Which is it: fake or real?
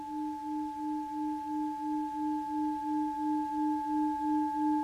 real